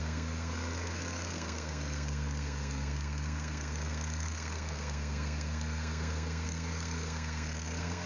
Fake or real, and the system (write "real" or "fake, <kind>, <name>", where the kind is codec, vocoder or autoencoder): fake, codec, SNAC